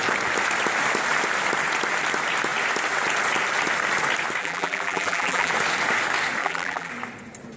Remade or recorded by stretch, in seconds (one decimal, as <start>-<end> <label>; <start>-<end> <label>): 0.0-4.4 recorded; 4.4-5.5 remade; 5.5-6.4 recorded; 6.4-6.9 remade; 6.9-7.6 recorded